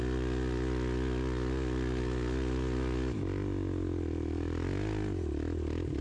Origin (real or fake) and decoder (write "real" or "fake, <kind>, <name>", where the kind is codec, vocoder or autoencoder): real